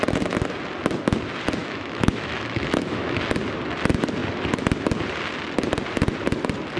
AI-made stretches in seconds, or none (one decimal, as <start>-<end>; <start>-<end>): 1.6-3.2